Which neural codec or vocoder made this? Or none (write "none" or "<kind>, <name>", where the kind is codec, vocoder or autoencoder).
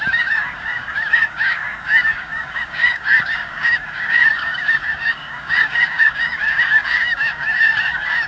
codec, DAC